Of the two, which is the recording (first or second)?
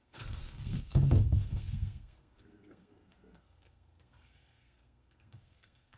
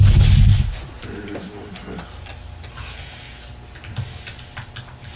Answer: second